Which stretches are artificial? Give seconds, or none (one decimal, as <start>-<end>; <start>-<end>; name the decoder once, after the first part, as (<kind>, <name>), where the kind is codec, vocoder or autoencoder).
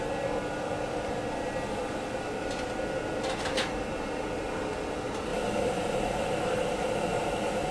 none